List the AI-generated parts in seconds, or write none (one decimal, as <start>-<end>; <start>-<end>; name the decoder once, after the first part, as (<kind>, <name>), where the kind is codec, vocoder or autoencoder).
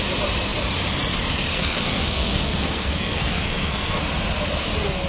1.5-4.0 (codec, SNAC)